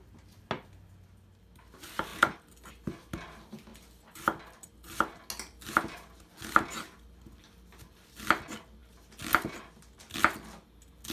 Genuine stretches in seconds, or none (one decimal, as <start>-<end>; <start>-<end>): 0.0-11.1